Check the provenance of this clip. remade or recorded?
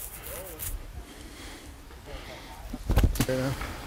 recorded